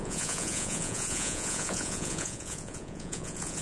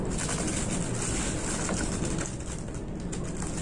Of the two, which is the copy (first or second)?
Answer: first